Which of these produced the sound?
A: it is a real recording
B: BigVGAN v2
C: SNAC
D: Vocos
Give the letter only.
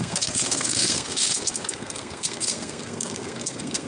C